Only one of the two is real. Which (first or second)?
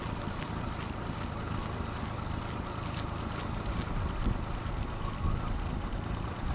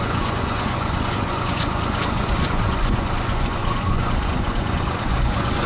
first